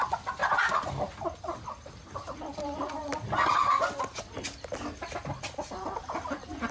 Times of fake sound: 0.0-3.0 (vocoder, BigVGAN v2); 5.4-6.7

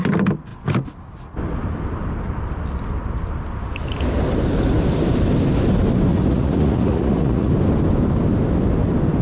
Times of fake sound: 6.1-7.5 (vocoder, Vocos)

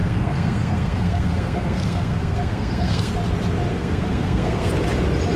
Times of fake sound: 0.0-3.1 (codec, SNAC); 3.7-4.7